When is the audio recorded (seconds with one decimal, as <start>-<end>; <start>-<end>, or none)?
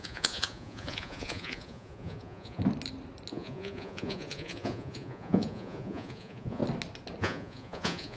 2.6-3.3; 6.6-7.2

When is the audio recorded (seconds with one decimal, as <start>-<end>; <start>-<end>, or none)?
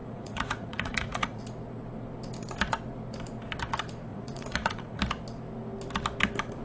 1.4-4.1; 5.0-6.6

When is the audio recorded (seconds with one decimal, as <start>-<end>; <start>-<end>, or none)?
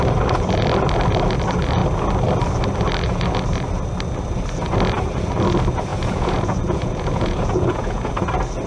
0.0-5.9; 8.1-8.7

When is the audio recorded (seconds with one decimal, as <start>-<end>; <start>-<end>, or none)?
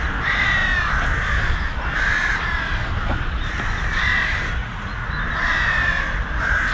0.0-4.6; 5.1-6.7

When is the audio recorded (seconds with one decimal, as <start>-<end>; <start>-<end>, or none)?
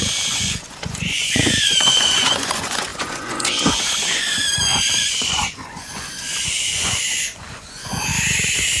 8.1-8.8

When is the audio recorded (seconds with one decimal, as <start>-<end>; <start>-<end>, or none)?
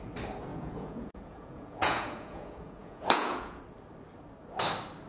0.0-0.5; 3.6-5.1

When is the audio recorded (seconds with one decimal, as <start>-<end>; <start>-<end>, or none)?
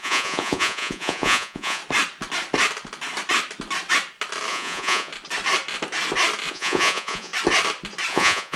1.8-4.5; 5.1-6.5; 7.3-8.1